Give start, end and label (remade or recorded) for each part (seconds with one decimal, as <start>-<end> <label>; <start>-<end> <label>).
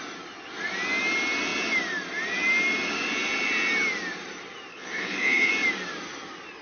0.0-4.7 recorded; 4.7-5.5 remade; 5.5-6.6 recorded